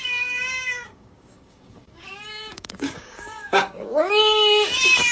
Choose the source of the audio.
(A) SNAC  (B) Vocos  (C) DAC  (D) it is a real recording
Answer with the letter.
C